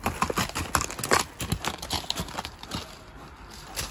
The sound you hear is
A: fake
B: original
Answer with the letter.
B